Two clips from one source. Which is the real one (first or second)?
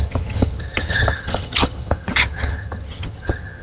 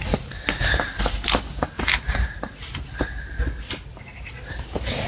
second